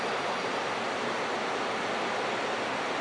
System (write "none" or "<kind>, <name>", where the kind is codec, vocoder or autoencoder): none